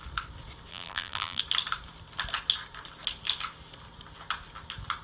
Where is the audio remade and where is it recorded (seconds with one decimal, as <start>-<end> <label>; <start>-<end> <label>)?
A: 0.0-0.7 recorded; 0.7-1.4 remade; 1.4-5.0 recorded